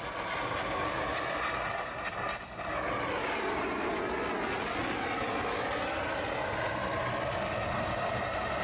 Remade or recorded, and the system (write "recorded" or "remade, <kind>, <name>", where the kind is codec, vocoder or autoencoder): recorded